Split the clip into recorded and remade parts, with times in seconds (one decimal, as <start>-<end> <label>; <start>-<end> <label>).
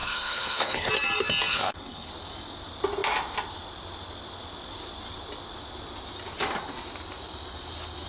0.0-0.9 remade; 0.9-1.5 recorded; 1.5-2.1 remade; 2.1-8.1 recorded